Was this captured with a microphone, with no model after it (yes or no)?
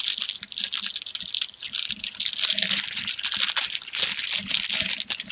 yes